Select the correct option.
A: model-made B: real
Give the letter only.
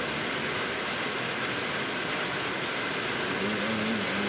B